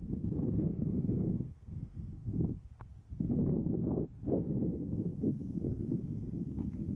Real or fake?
fake